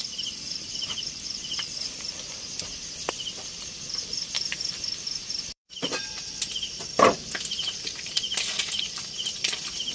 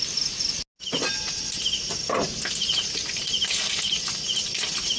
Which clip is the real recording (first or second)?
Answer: second